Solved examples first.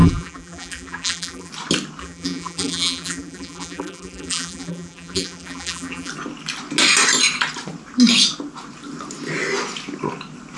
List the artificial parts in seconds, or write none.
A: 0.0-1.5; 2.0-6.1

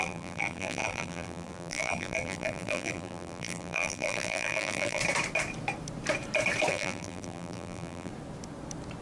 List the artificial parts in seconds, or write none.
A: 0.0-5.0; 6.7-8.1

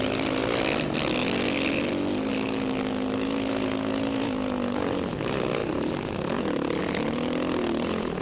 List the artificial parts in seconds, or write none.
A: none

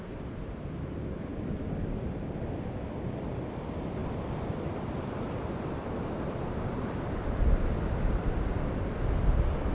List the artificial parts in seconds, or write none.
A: 4.0-8.8

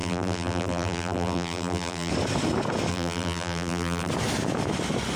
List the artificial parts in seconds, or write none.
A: 0.0-2.1; 2.9-4.1

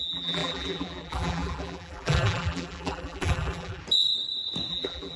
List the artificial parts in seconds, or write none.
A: 0.0-3.8; 4.7-5.2